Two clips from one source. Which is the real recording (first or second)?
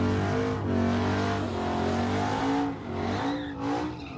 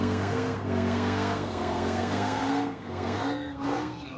first